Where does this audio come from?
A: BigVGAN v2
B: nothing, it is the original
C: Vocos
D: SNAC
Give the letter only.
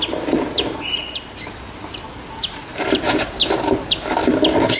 B